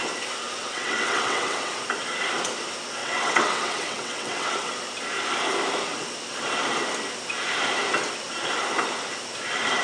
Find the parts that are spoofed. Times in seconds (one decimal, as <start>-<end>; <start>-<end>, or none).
0.6-1.7; 3.0-4.7

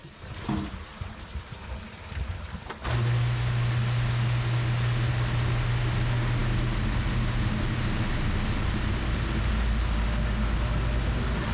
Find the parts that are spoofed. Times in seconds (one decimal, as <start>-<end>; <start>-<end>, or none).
none

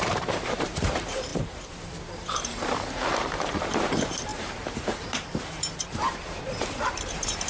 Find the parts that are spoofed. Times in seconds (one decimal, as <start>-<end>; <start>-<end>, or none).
0.0-7.5

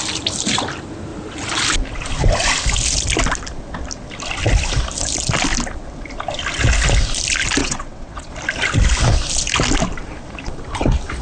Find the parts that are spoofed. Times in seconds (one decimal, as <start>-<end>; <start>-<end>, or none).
7.6-8.3

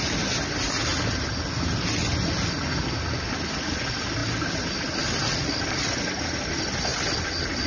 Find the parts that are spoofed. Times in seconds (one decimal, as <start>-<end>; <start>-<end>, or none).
none

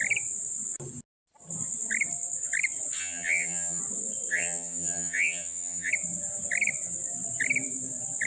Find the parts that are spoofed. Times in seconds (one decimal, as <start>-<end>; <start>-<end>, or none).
3.0-3.8; 4.3-5.9

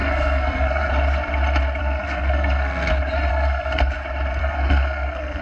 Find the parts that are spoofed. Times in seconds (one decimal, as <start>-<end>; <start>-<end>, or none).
0.0-0.9; 1.8-2.9; 3.3-3.8; 4.4-5.4

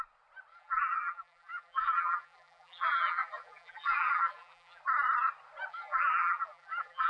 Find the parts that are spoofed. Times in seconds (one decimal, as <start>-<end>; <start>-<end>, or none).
0.5-4.8; 5.7-7.1